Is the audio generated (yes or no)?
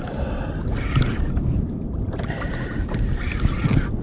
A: no